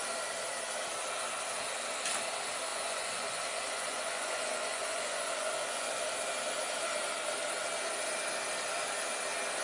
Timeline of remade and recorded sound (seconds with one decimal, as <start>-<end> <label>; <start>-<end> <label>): 0.0-2.7 recorded; 2.7-6.0 remade; 6.0-9.6 recorded